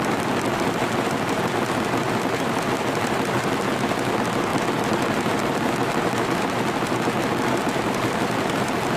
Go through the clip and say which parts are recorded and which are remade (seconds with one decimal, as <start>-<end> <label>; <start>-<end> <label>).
0.0-9.0 recorded